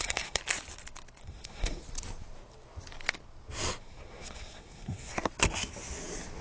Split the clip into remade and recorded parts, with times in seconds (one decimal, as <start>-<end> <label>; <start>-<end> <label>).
0.0-0.4 remade; 0.4-1.2 recorded; 1.2-1.8 remade; 1.8-3.8 recorded; 3.8-5.1 remade; 5.1-6.4 recorded